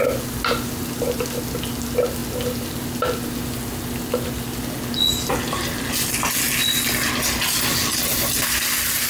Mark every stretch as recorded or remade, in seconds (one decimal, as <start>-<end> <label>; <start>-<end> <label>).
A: 0.0-9.1 recorded